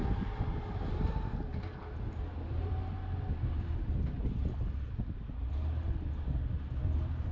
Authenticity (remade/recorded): recorded